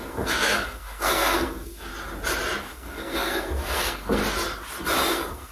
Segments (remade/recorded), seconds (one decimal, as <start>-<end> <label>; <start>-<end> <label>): 0.0-1.9 remade; 1.9-2.6 recorded; 2.6-4.2 remade; 4.2-5.1 recorded; 5.1-5.5 remade